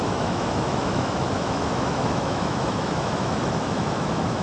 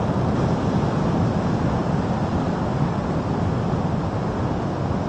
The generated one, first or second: first